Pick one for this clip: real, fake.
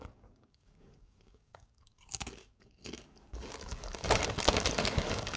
fake